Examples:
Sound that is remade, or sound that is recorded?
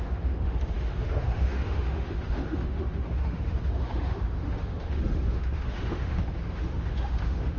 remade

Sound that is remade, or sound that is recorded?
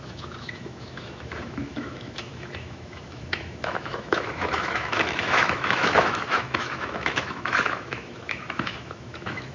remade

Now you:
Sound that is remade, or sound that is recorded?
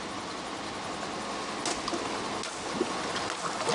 recorded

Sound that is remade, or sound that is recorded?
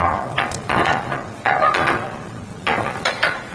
remade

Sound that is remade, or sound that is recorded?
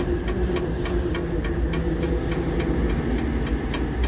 recorded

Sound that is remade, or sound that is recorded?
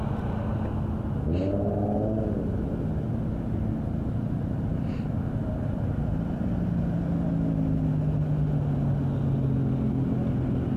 recorded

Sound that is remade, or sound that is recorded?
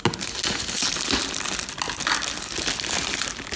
recorded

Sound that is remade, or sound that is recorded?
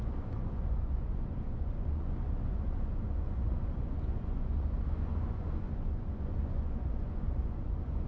remade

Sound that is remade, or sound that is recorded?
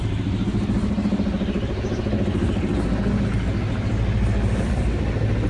recorded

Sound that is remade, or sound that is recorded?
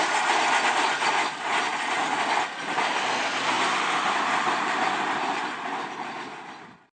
recorded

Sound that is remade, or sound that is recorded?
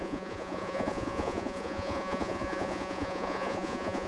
remade